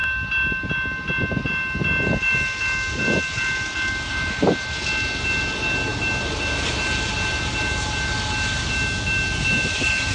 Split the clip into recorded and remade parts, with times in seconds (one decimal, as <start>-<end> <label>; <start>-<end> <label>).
0.0-10.1 recorded